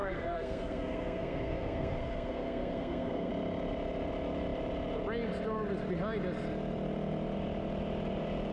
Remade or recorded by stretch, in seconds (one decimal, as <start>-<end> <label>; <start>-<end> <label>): 0.0-3.3 remade; 3.3-8.5 recorded